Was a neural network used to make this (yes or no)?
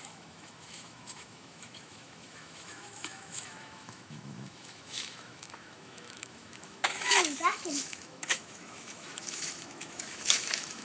yes